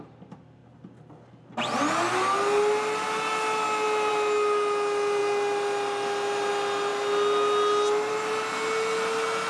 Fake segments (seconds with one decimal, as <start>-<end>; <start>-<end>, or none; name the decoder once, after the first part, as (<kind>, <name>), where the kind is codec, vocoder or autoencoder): none